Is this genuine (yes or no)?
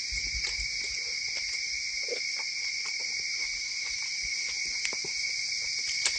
yes